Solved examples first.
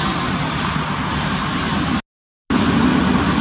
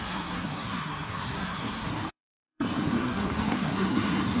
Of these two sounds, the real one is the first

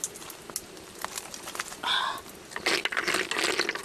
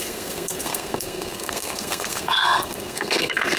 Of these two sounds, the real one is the first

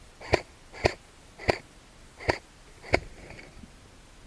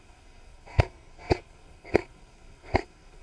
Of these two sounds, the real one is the first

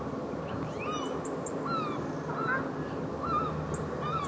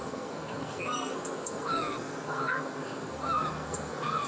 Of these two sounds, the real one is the first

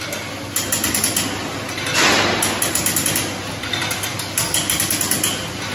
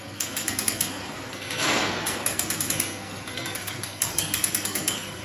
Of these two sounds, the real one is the first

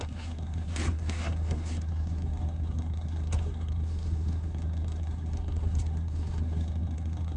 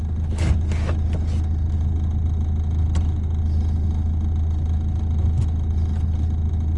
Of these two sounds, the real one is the second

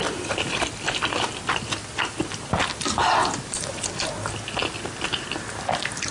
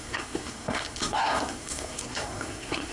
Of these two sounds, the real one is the first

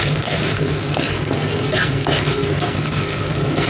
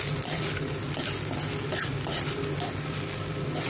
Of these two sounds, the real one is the second